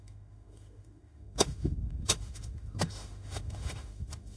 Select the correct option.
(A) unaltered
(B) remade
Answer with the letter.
B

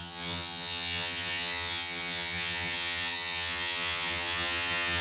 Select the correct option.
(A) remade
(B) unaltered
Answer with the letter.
A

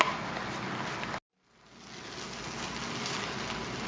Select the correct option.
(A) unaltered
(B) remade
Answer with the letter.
A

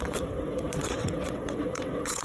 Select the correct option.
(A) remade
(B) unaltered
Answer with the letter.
A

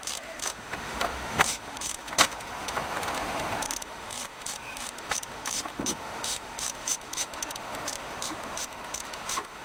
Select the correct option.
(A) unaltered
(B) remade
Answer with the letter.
B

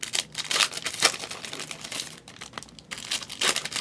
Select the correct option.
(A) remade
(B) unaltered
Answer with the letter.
B